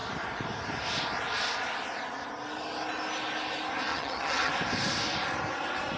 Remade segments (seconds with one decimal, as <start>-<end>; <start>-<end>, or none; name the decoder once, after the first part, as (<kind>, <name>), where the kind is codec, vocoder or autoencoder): 3.9-4.5 (vocoder, HiFi-GAN)